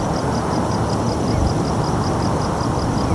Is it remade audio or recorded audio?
recorded